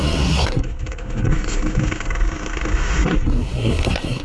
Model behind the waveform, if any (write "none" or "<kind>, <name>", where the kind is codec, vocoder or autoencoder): codec, SNAC